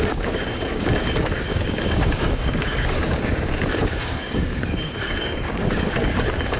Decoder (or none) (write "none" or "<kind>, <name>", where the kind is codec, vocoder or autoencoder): codec, DAC